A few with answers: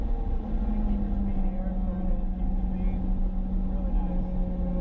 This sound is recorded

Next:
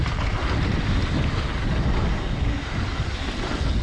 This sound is recorded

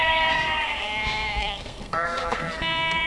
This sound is remade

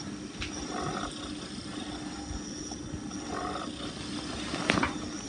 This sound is recorded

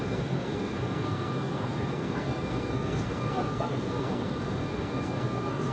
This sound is remade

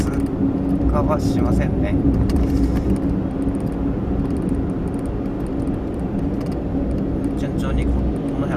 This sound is recorded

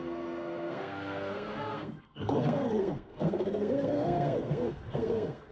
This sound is remade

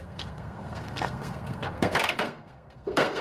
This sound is remade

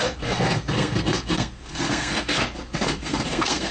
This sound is remade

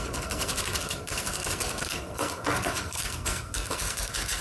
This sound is remade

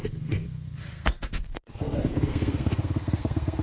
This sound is remade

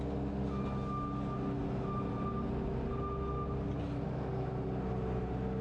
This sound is recorded